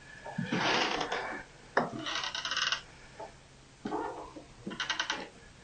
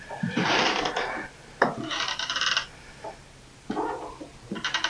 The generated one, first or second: second